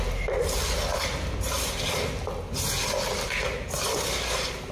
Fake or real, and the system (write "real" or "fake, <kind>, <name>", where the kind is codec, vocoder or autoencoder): real